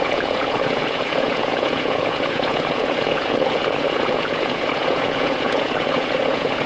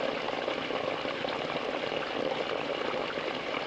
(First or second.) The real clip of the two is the second